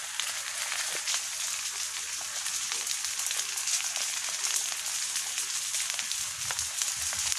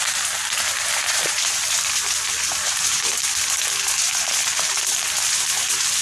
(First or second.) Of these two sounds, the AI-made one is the second